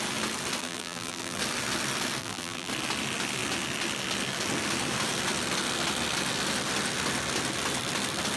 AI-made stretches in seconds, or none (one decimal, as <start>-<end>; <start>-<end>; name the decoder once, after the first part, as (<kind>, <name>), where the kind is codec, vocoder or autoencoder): 0.6-1.4 (vocoder, BigVGAN v2); 2.2-2.7